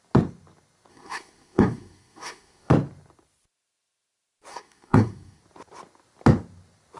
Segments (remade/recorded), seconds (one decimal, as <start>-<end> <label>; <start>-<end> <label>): 0.0-0.9 recorded; 0.9-2.7 remade; 2.7-4.5 recorded; 4.5-5.4 remade; 5.4-7.0 recorded